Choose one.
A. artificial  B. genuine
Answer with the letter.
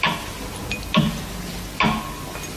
B